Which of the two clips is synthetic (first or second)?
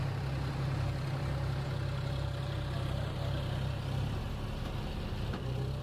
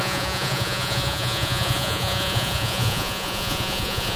second